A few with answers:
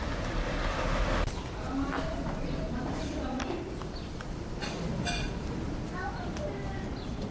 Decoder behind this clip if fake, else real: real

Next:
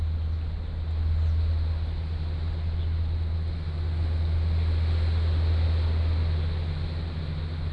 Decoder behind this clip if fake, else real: real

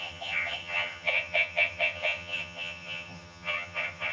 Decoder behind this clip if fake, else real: fake, vocoder, HiFi-GAN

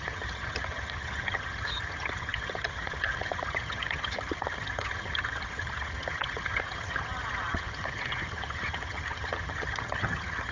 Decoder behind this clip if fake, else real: fake, vocoder, HiFi-GAN